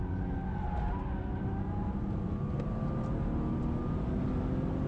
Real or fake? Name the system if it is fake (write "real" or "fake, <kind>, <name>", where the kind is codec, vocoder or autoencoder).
real